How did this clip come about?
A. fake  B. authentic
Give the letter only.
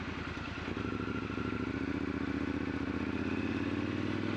B